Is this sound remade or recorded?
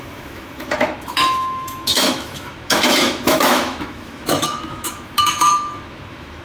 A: remade